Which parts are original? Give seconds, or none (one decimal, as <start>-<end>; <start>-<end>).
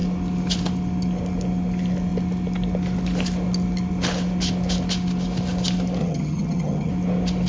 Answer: 0.0-6.0; 6.9-7.5